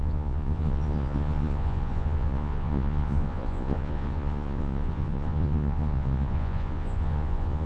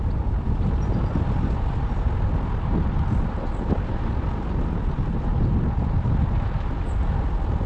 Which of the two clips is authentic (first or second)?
second